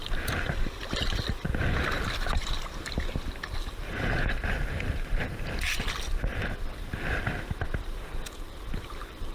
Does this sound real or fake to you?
fake